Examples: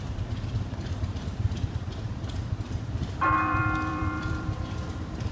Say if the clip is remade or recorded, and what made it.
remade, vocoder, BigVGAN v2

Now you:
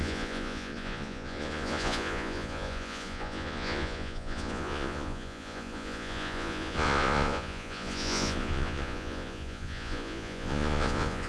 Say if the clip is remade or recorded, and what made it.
remade, vocoder, Vocos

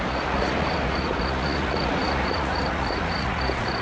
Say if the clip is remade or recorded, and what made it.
remade, vocoder, Vocos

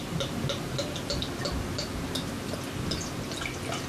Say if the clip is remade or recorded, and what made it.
recorded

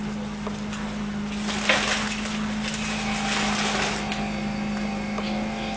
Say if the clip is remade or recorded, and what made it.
recorded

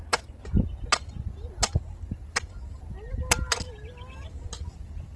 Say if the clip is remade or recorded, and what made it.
recorded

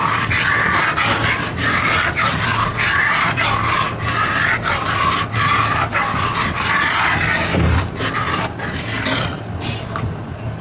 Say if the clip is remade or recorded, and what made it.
remade, vocoder, BigVGAN v2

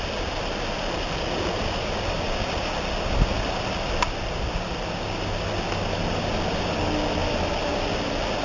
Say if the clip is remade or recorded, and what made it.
recorded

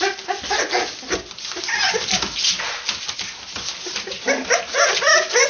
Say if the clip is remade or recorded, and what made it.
recorded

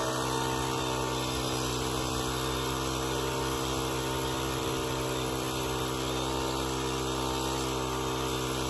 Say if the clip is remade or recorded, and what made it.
recorded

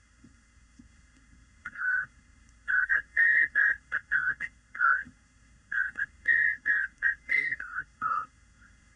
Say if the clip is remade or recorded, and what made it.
remade, codec, SNAC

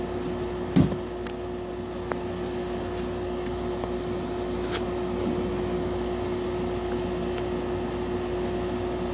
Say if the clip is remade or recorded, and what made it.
recorded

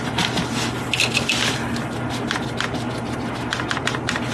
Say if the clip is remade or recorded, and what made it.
recorded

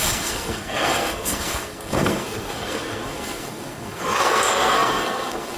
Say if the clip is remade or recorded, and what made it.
remade, codec, SNAC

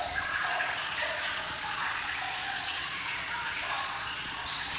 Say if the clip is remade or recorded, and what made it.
remade, vocoder, Vocos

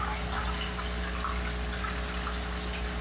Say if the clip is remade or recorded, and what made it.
recorded